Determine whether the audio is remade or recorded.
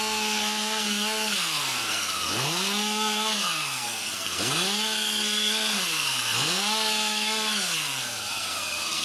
remade